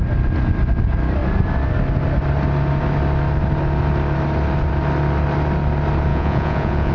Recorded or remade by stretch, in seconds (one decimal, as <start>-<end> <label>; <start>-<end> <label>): 0.0-6.1 recorded; 6.1-6.9 remade